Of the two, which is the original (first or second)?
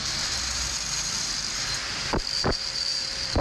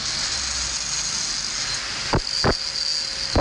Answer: second